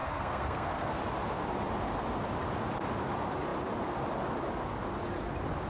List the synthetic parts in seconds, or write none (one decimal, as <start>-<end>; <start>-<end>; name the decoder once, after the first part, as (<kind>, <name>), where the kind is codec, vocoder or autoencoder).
0.0-1.0 (codec, SNAC)